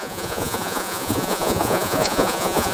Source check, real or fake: fake